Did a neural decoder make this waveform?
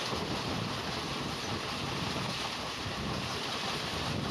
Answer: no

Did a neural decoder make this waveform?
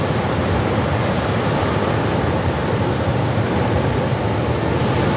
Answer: no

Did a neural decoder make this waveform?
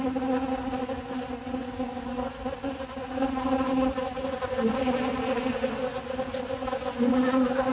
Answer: no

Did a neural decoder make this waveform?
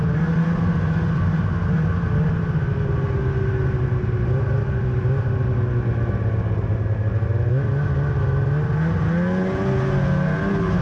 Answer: no